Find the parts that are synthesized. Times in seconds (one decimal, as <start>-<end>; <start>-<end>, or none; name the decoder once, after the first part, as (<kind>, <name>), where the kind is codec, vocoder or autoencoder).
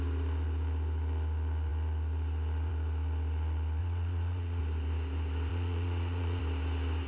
3.8-4.6 (vocoder, Vocos); 5.5-6.4